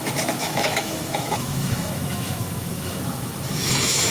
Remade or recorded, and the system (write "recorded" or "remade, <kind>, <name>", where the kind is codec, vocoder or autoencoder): remade, autoencoder, DAC-VAE